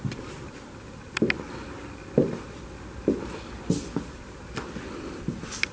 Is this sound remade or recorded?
recorded